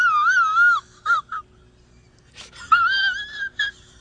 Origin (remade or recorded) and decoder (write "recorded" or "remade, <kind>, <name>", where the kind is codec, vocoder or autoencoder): recorded